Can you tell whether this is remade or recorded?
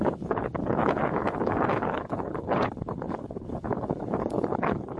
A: remade